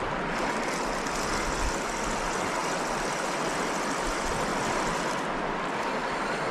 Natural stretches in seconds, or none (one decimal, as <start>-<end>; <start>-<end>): 0.0-6.5